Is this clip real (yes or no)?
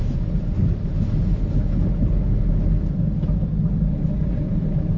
yes